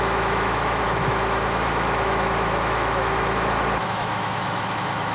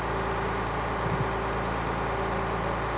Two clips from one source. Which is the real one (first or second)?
second